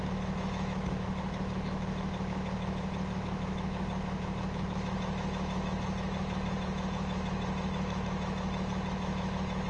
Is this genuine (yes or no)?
no